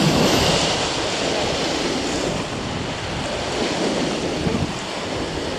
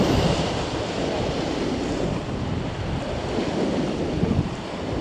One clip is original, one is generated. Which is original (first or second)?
first